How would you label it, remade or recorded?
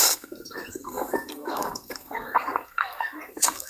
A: remade